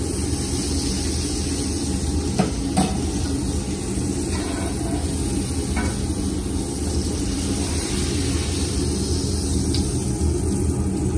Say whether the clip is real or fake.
real